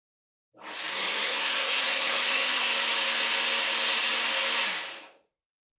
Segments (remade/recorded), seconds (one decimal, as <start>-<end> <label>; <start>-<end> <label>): 0.0-0.9 recorded; 0.9-2.7 remade; 2.7-5.8 recorded